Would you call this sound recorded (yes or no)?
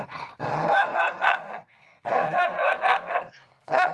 no